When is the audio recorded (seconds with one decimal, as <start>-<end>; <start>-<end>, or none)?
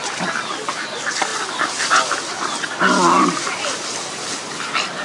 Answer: 0.0-5.0